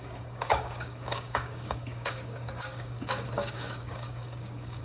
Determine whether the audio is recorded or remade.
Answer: remade